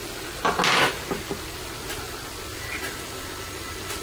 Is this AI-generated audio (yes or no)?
no